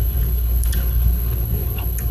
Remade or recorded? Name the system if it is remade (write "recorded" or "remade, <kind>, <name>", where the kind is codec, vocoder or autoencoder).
remade, codec, HILCodec